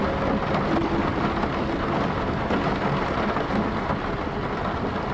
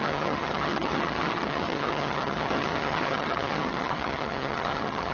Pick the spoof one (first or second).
second